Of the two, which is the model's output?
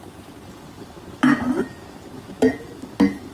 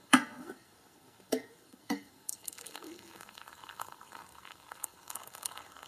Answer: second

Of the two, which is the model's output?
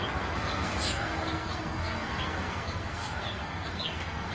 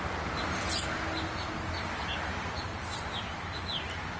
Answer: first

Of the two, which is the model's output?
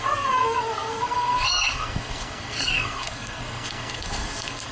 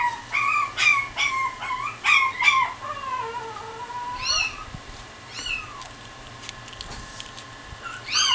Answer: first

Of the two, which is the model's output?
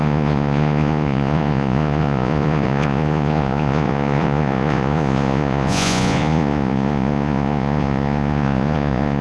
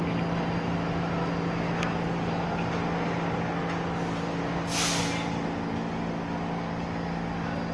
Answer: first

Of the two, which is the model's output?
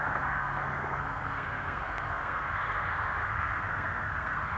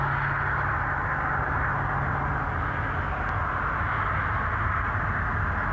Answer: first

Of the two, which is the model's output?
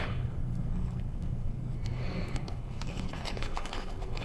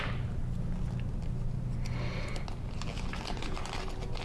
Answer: first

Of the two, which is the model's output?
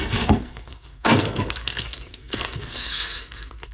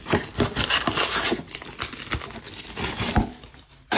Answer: first